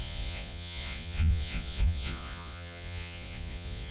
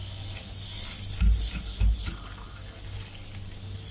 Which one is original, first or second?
second